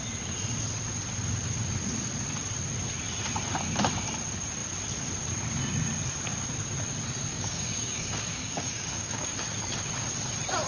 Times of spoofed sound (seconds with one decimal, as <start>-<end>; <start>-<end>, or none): 7.3-9.4